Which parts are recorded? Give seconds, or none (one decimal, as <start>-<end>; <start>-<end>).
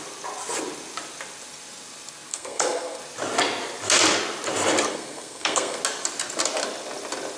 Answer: 0.0-2.3; 3.0-4.9; 5.8-7.4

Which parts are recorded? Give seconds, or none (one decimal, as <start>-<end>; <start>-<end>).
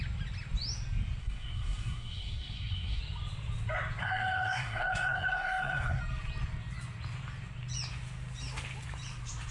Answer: 0.0-1.2; 3.0-4.0; 6.0-9.5